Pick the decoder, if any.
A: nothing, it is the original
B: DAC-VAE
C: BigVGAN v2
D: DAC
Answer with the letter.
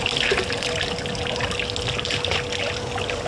A